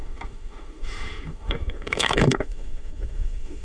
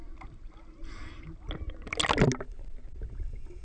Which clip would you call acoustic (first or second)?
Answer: second